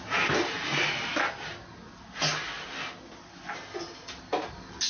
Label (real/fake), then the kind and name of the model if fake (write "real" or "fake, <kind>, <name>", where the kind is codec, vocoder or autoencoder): real